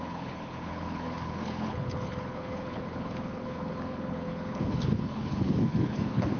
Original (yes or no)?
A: no